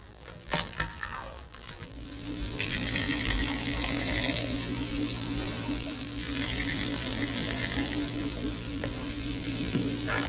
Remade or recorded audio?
remade